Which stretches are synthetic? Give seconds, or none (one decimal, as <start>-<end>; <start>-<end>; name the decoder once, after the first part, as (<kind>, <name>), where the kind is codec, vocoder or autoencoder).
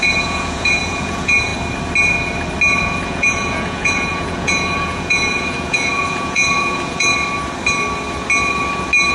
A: 0.0-1.5 (vocoder, Vocos); 2.8-7.1